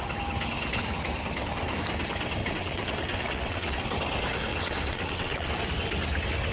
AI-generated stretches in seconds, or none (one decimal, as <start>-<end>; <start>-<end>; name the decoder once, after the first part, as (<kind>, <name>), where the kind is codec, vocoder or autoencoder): 2.4-3.8 (vocoder, WaveNeXt); 4.5-5.5